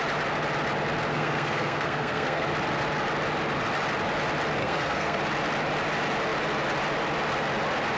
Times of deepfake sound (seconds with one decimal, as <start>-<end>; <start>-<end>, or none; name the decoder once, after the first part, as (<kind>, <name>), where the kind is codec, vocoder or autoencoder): 1.1-2.5 (codec, SNAC); 4.6-5.2

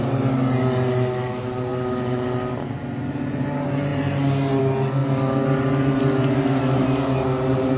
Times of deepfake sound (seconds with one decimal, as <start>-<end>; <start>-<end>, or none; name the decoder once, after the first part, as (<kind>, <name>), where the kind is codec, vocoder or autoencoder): none

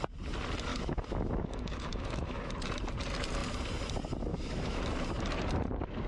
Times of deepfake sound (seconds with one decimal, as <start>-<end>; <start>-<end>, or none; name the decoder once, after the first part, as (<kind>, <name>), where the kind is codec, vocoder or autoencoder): 0.7-2.5 (autoencoder, DAC-VAE); 4.3-4.8

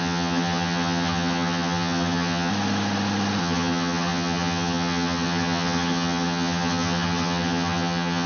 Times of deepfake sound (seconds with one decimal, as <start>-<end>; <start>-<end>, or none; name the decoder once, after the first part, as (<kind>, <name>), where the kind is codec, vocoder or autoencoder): 0.0-2.5 (vocoder, HiFi-GAN); 3.4-8.3

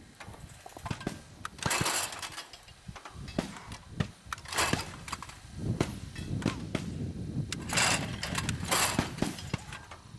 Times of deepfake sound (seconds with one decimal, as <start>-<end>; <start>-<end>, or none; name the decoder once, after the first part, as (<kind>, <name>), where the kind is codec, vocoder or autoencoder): none

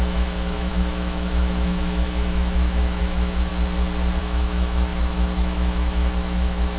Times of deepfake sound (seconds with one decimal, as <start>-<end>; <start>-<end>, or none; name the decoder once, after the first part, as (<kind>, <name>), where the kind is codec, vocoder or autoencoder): 0.0-3.5 (autoencoder, DAC-VAE); 4.2-6.8

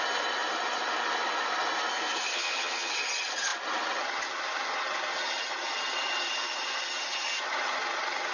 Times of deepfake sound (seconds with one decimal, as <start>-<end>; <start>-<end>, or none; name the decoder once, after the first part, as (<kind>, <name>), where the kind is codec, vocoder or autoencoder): 2.3-2.9 (vocoder, HiFi-GAN)

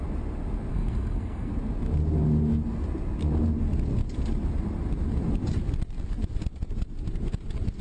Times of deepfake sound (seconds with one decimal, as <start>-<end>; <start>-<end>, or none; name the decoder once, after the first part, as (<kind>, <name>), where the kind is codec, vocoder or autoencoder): 0.7-1.5 (codec, SNAC)